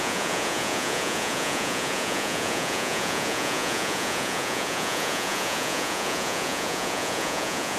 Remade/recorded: remade